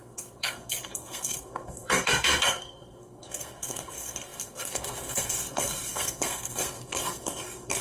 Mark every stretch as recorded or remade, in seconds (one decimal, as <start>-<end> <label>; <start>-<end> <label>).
0.0-7.8 remade